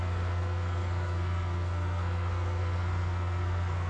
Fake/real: fake